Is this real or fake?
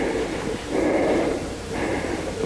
fake